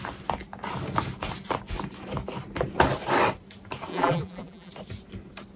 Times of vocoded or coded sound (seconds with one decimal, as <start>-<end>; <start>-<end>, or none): 3.9-4.7